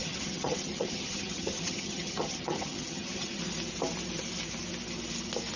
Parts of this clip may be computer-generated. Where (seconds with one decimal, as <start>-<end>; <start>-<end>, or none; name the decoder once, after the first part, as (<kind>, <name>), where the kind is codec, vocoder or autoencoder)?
0.0-3.4 (vocoder, HiFi-GAN)